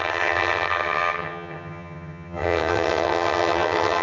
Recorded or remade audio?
remade